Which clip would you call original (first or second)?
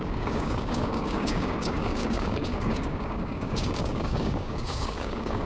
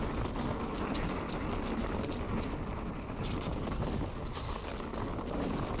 second